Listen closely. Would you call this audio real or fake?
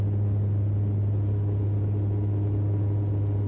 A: real